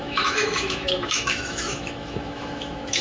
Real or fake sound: fake